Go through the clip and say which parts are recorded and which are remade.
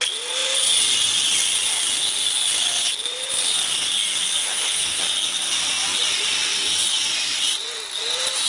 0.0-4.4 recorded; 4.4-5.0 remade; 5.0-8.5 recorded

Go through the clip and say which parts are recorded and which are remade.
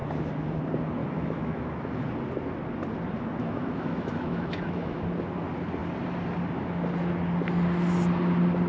0.0-1.0 recorded; 1.0-2.0 remade; 2.0-3.4 recorded; 3.4-5.0 remade; 5.0-8.7 recorded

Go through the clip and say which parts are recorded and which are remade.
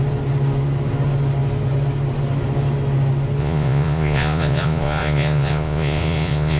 0.0-3.4 recorded; 3.4-6.6 remade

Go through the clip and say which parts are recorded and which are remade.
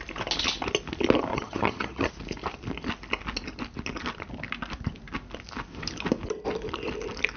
0.0-1.3 recorded; 1.3-2.1 remade; 2.1-7.4 recorded